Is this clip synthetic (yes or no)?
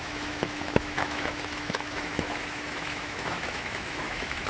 yes